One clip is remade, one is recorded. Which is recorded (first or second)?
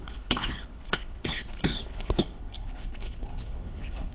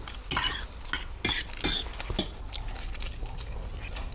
second